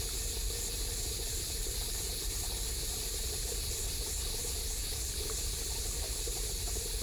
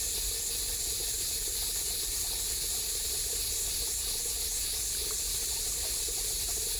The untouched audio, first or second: second